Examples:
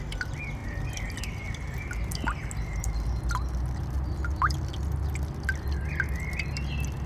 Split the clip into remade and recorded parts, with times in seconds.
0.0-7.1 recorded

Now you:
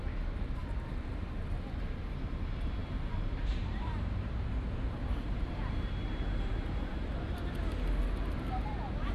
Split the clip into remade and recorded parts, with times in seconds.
0.0-0.6 recorded; 0.6-1.1 remade; 1.1-2.8 recorded; 2.8-7.5 remade; 7.5-9.1 recorded

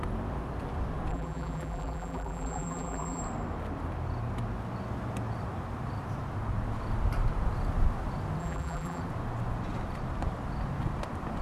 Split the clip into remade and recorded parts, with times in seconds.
0.0-1.1 recorded; 1.1-3.2 remade; 3.2-8.4 recorded; 8.4-9.0 remade; 9.0-11.4 recorded